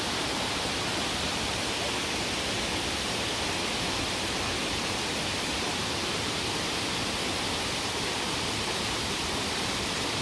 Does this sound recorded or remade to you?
recorded